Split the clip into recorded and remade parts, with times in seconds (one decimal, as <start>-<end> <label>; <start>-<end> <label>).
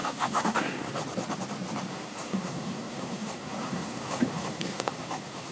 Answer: 0.0-0.9 remade; 0.9-1.9 recorded; 1.9-5.5 remade